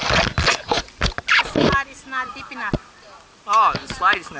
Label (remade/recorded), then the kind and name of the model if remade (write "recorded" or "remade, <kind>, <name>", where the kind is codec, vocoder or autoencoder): recorded